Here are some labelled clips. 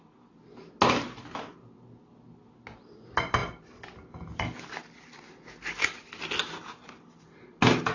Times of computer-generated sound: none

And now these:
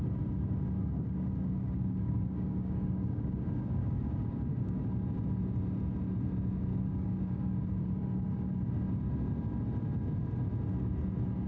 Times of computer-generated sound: 0.8-4.9 (codec, DAC); 6.7-7.5

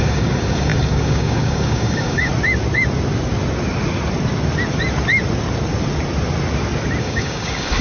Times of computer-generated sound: 0.0-2.3 (codec, DAC); 7.0-7.8

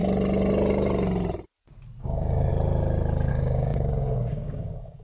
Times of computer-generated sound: 2.0-2.5 (codec, DAC); 3.3-5.0